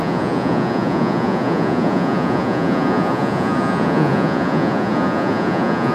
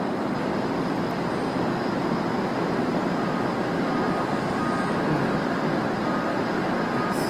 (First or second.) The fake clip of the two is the first